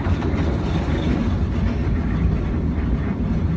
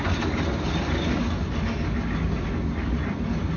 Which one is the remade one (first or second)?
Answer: first